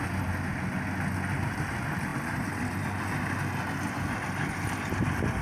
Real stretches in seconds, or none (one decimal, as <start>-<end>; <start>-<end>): 0.0-5.4